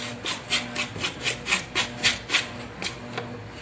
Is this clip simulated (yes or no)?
no